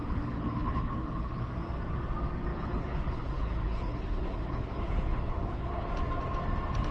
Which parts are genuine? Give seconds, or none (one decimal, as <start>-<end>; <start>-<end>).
1.5-2.5; 5.9-6.9